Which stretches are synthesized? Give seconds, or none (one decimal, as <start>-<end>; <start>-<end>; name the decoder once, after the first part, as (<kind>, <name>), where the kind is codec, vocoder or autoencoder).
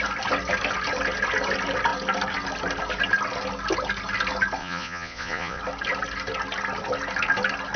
4.6-5.6 (vocoder, Vocos)